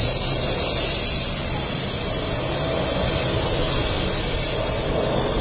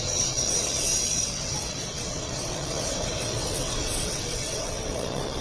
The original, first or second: first